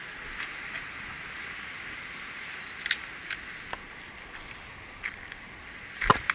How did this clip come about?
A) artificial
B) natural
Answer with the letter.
B